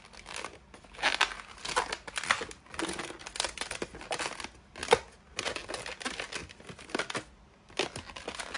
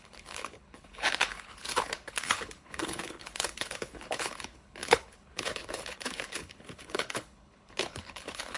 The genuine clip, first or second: first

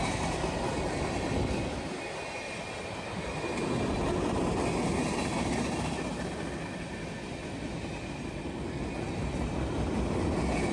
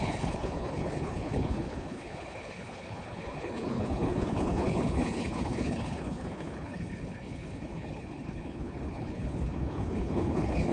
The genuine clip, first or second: first